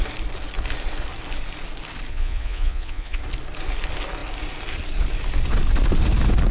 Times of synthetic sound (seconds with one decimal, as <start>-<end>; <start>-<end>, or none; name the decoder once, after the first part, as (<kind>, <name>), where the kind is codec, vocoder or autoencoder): 2.1-3.2 (vocoder, Vocos)